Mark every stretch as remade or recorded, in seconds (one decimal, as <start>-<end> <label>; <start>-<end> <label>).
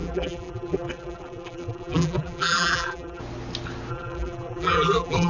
0.0-3.2 remade; 3.2-3.9 recorded; 3.9-5.3 remade